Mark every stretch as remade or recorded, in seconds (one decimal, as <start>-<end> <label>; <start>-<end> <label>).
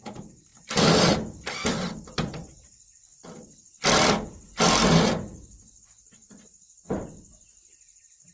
0.0-0.5 recorded; 0.5-2.5 remade; 2.5-3.1 recorded; 3.1-5.8 remade; 5.8-8.3 recorded